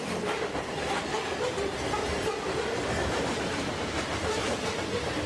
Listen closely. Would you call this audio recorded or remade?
recorded